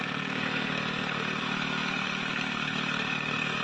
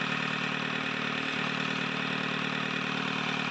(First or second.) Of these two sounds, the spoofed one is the first